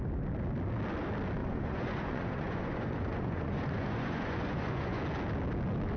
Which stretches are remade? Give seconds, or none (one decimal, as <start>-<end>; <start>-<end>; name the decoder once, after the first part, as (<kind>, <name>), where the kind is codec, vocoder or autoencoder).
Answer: 1.4-5.0 (vocoder, Vocos)